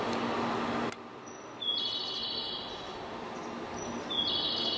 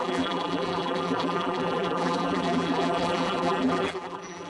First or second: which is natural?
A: first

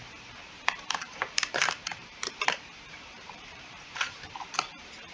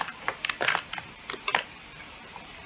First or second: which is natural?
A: second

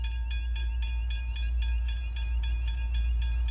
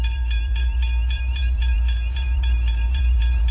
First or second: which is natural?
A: first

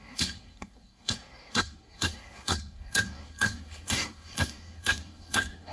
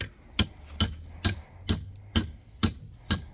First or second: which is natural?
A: second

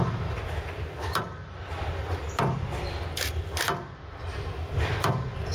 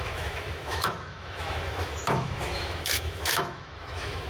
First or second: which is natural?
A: first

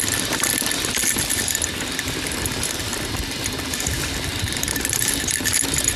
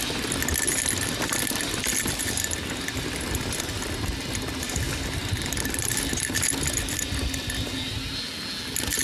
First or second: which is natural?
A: second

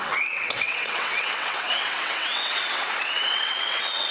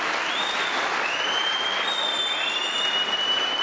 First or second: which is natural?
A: second